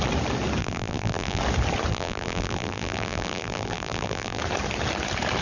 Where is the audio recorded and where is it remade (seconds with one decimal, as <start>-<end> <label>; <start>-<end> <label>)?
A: 0.0-0.6 recorded; 0.6-1.4 remade; 1.4-1.9 recorded; 1.9-4.4 remade; 4.4-5.4 recorded